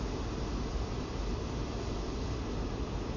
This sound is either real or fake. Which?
real